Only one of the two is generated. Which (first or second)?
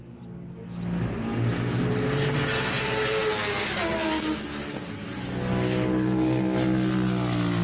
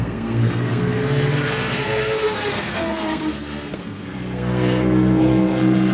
second